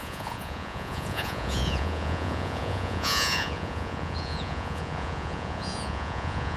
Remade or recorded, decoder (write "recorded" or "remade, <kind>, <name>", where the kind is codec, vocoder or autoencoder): remade, vocoder, Vocos